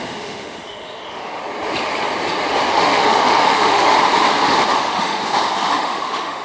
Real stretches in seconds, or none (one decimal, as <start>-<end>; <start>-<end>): 1.4-2.7; 3.9-4.8; 5.2-5.7